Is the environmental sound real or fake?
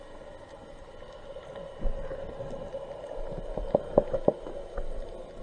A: real